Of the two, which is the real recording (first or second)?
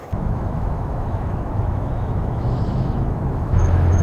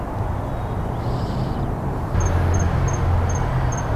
second